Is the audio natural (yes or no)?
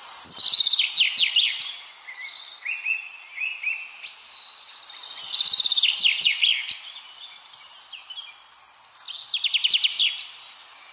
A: yes